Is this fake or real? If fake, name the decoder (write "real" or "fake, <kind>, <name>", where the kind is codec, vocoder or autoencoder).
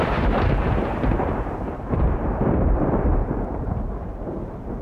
fake, vocoder, BigVGAN v2